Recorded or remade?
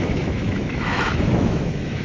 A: remade